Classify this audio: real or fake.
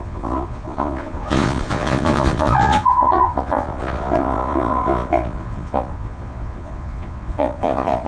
fake